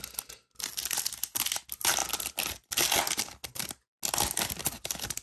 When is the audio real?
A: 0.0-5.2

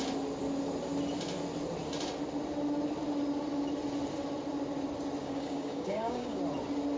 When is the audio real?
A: 0.0-5.2; 6.4-7.0

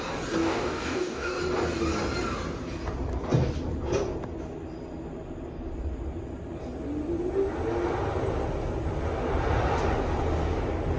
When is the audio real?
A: 0.0-0.4; 1.4-11.0

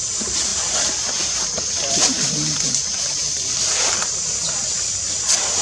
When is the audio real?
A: 0.0-5.6

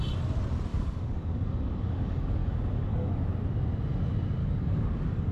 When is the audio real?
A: 0.0-0.7; 3.1-4.4

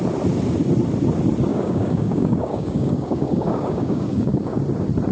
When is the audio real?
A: 0.0-1.5; 4.6-5.1

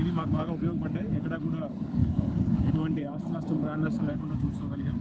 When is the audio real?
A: 0.0-2.0; 3.0-3.6